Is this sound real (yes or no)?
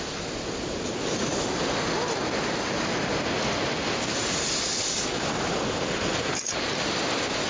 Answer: yes